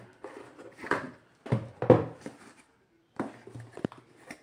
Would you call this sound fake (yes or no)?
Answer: no